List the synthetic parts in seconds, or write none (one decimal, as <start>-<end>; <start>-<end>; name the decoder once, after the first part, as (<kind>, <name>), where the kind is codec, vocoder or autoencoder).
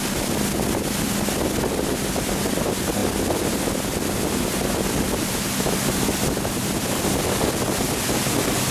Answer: none